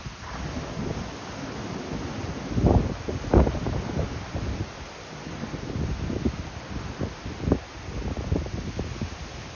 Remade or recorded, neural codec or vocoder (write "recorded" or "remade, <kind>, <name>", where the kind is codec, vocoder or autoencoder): recorded